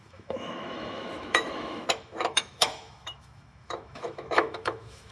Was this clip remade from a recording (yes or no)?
yes